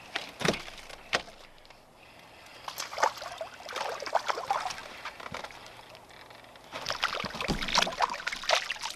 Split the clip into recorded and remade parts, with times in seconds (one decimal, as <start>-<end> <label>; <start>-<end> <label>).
0.0-9.0 recorded